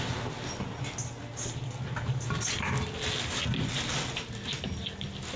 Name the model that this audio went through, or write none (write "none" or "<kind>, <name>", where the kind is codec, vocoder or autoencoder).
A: none